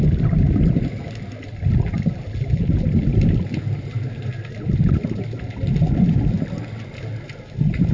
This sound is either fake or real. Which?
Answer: real